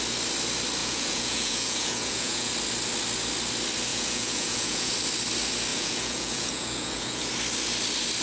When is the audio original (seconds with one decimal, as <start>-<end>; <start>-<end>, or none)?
0.0-0.8; 2.5-3.9; 4.9-5.7; 7.3-8.2

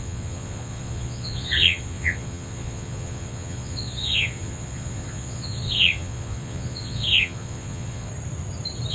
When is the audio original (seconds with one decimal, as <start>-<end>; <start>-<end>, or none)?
8.1-8.9

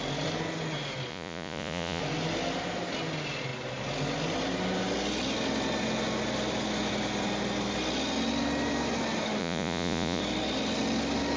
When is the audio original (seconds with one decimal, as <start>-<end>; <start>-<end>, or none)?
0.0-1.1; 2.0-9.4; 10.2-11.4

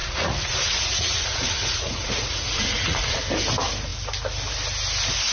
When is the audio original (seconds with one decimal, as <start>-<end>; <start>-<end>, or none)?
3.2-5.3

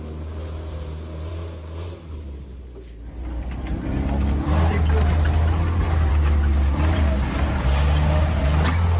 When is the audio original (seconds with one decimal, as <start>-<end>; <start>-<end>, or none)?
0.0-9.0

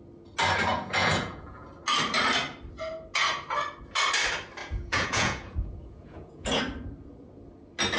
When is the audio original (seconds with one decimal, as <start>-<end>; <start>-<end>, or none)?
0.0-0.7; 1.7-4.6; 6.6-8.0

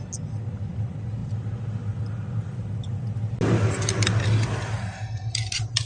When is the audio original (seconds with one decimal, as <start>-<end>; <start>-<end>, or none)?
0.0-5.9